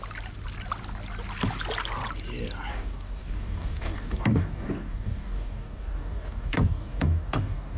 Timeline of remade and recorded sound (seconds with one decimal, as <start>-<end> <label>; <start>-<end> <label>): 0.0-2.7 recorded; 2.7-7.8 remade